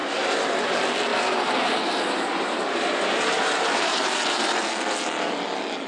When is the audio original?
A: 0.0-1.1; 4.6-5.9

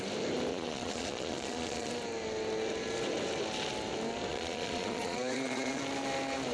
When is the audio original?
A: 0.0-0.5; 1.9-4.3; 5.8-6.5

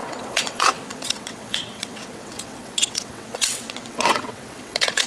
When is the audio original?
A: none

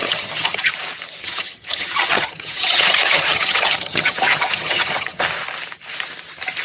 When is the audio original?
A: 0.7-1.2; 5.2-6.6

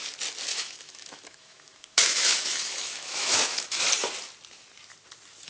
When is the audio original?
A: 0.0-0.5; 3.8-5.5